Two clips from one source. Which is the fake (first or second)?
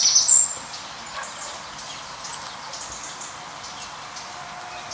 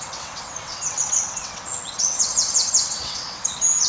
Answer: second